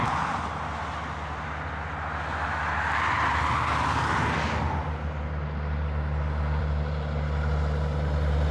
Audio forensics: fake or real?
real